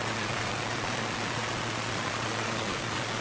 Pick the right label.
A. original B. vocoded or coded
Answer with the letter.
B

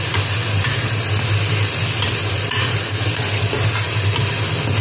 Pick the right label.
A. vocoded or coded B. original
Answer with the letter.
B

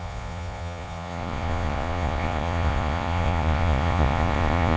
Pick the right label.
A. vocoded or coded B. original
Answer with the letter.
A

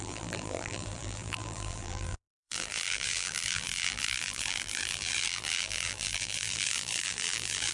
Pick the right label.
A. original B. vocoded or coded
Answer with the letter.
B